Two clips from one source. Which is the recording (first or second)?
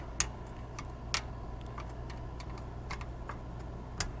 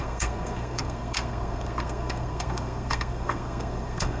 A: first